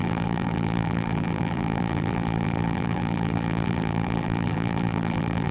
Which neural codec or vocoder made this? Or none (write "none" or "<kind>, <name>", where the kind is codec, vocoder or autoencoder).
vocoder, BigVGAN v2